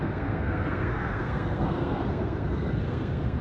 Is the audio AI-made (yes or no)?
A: yes